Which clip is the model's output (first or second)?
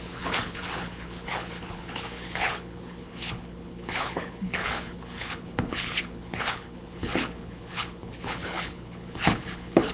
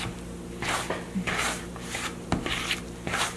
first